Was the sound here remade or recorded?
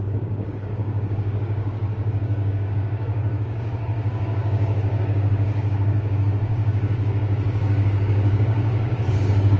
remade